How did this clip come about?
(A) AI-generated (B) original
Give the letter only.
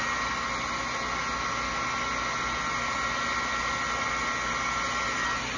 B